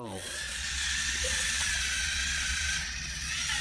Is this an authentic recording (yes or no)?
no